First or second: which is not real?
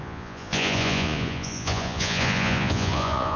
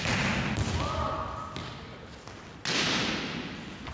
first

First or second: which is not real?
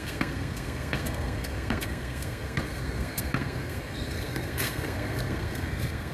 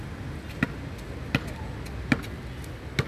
first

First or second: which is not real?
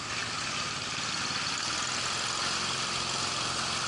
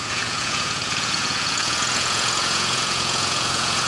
second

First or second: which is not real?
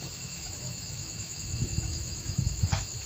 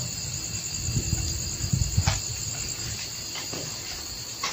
first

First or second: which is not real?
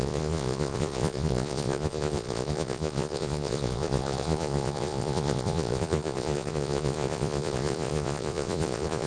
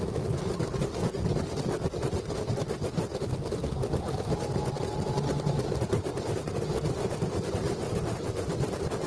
first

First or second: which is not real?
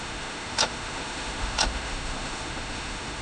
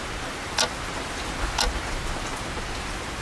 first